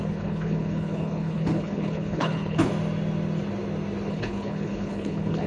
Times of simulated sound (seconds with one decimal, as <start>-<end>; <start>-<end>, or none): 0.0-2.7; 4.1-5.5